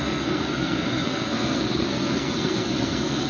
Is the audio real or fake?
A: fake